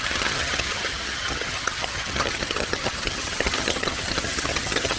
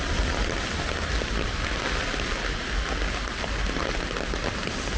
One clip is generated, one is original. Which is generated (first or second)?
first